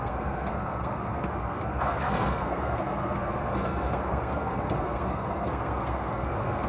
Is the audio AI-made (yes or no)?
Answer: yes